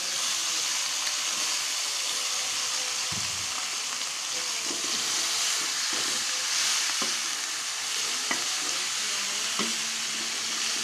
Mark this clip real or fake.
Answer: real